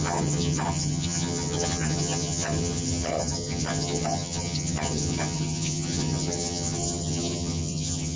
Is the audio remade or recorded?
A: remade